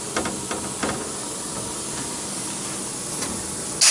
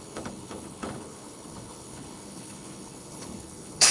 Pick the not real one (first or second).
second